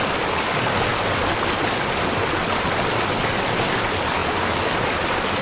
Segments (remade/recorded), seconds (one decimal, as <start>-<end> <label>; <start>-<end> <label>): 0.0-5.4 recorded